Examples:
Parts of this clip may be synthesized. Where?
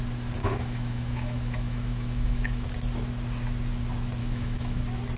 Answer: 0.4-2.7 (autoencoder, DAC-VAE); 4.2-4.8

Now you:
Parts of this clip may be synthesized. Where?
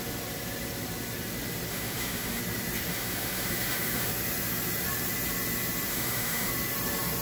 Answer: 1.7-2.4 (autoencoder, DAC-VAE); 2.9-4.1; 5.9-6.5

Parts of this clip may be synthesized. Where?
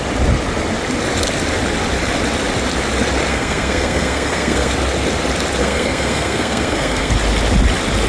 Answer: 3.3-4.7 (codec, SNAC); 5.6-7.1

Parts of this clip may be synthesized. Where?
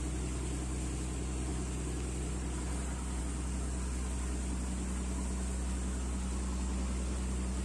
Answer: none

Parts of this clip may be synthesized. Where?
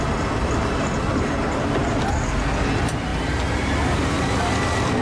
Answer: 0.4-2.0 (vocoder, BigVGAN v2); 3.1-4.3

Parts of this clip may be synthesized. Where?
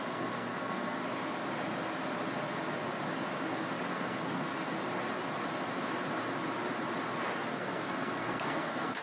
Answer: 0.0-1.0 (codec, SNAC); 3.9-4.5; 7.5-9.0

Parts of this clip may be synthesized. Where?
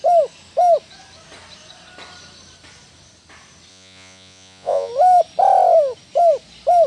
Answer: 3.7-4.9 (vocoder, Vocos)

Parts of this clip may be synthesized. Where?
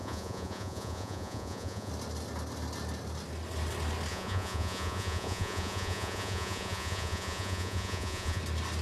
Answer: 0.0-1.9 (vocoder, Vocos); 4.1-8.4